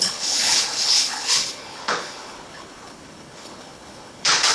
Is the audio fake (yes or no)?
yes